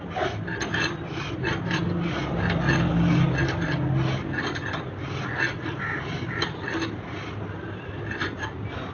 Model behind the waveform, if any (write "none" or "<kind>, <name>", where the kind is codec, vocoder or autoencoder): none